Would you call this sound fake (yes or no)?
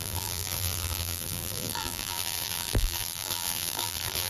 yes